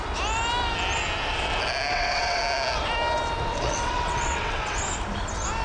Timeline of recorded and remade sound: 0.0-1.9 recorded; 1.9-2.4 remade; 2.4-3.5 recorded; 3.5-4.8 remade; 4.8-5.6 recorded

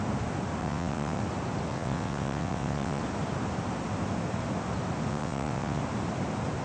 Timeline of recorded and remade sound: 0.0-0.6 recorded; 0.6-1.2 remade; 1.2-1.7 recorded; 1.7-3.0 remade; 3.0-5.1 recorded; 5.1-5.8 remade; 5.8-6.6 recorded

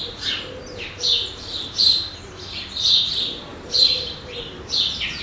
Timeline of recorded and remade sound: 0.0-5.2 recorded